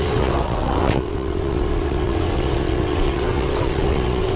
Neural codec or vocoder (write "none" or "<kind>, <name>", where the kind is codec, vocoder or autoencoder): vocoder, WaveNeXt